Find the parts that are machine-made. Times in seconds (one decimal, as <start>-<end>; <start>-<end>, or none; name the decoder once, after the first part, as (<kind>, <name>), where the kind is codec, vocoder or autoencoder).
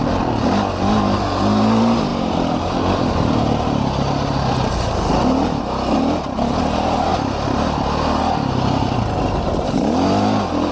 none